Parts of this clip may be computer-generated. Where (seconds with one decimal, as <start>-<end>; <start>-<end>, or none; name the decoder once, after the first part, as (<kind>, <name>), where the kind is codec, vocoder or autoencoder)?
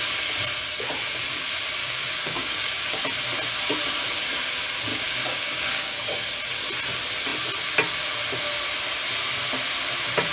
1.8-3.0 (codec, DAC); 4.9-6.3